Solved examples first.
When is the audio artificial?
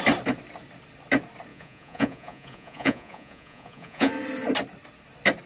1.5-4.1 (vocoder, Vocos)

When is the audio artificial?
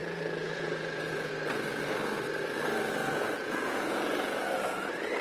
0.0-1.3 (vocoder, Vocos); 3.0-4.4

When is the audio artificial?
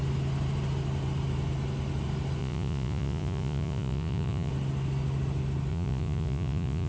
2.4-4.5 (vocoder, Vocos); 5.7-6.9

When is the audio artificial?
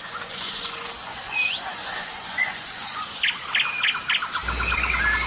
0.0-3.2 (vocoder, Vocos)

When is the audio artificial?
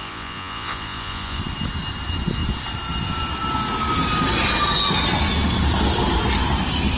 0.0-1.4 (vocoder, Vocos)